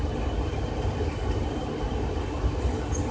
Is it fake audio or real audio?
real